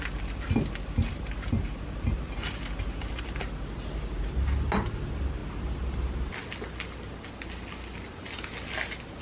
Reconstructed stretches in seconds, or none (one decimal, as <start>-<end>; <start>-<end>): none